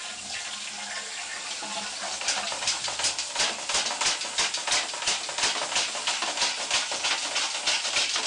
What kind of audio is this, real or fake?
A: real